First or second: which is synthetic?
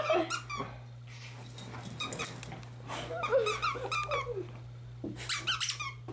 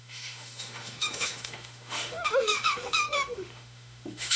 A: second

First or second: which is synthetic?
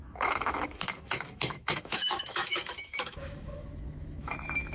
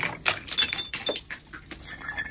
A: first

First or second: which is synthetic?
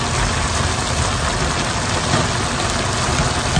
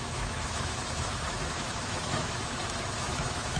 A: second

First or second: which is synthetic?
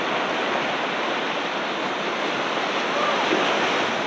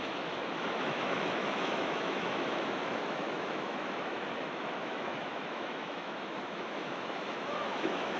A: second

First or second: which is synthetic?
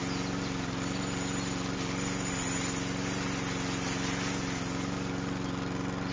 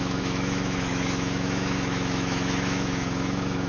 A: second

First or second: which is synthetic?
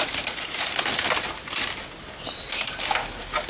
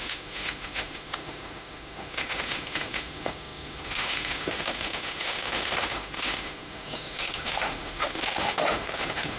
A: second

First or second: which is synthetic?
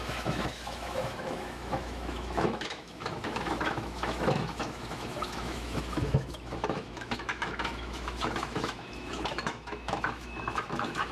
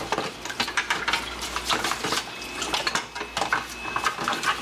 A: first